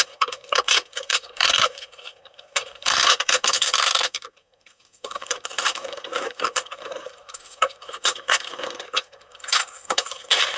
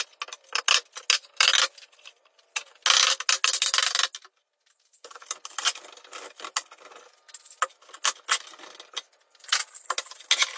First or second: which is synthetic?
first